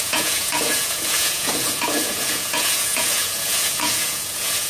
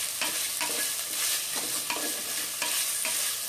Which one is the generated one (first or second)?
first